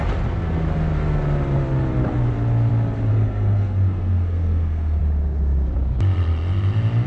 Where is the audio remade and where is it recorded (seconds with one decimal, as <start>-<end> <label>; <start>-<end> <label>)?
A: 0.0-3.1 recorded; 3.1-5.0 remade; 5.0-7.1 recorded